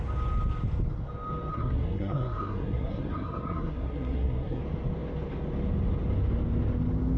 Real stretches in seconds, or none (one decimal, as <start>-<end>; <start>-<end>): 0.0-1.5; 4.6-7.2